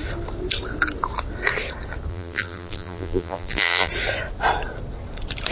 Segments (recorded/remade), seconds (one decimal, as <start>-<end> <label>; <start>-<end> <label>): 0.0-2.1 recorded; 2.1-3.9 remade; 3.9-5.5 recorded